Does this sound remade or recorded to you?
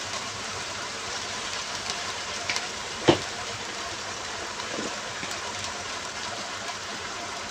remade